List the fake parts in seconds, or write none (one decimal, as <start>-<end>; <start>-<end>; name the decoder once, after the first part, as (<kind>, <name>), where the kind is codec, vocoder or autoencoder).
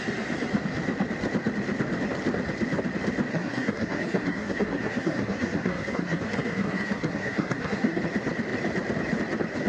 3.3-8.0 (codec, SNAC)